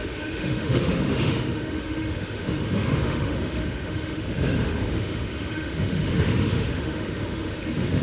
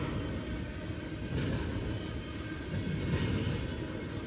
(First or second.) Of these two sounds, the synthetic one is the first